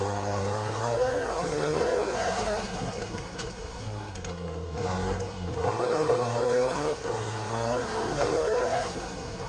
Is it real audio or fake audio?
fake